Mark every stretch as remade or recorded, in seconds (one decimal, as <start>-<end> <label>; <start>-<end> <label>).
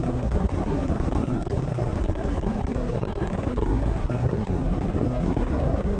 0.0-6.0 remade